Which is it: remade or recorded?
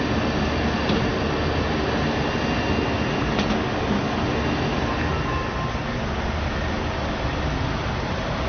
recorded